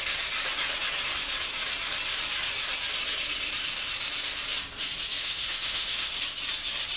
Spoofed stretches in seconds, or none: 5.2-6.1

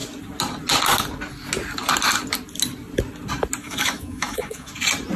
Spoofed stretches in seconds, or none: 3.6-4.7

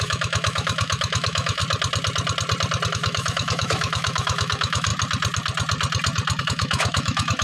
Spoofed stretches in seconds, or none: 0.0-1.6; 2.9-4.9; 6.4-7.4